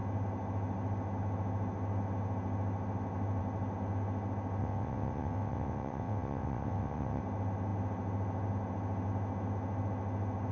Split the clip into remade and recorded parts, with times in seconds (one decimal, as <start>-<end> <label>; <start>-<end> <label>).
0.0-4.6 recorded; 4.6-7.2 remade; 7.2-10.5 recorded